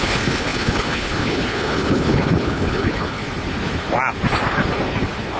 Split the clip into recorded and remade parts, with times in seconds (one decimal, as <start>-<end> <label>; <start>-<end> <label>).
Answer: 0.0-3.2 remade; 3.2-5.4 recorded

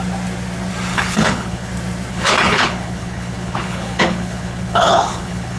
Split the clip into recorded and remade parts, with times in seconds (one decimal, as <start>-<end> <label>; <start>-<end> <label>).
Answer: 0.0-0.9 recorded; 0.9-1.7 remade; 1.7-2.1 recorded; 2.1-5.6 remade

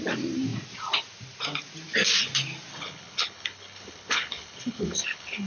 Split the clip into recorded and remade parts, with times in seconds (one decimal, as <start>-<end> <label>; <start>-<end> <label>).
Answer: 0.0-2.7 recorded; 2.7-5.5 remade

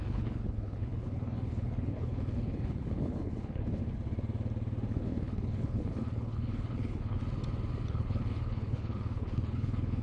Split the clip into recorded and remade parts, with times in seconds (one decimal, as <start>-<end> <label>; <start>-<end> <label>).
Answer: 0.0-3.8 remade; 3.8-4.9 recorded; 4.9-7.2 remade; 7.2-7.9 recorded; 7.9-10.0 remade

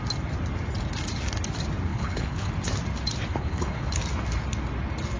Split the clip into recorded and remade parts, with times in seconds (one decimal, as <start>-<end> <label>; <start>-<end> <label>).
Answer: 0.0-1.9 recorded; 1.9-2.5 remade; 2.5-3.3 recorded; 3.3-3.9 remade; 3.9-5.2 recorded